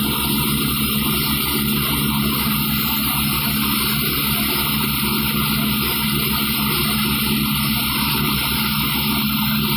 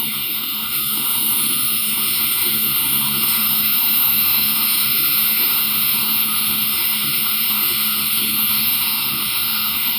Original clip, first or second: first